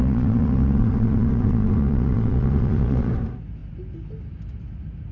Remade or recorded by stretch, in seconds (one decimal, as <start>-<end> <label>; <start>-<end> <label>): 0.0-3.1 remade; 3.1-5.1 recorded